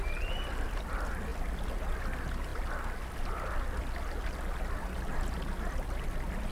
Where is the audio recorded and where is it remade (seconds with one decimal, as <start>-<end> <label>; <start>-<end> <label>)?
0.0-6.5 recorded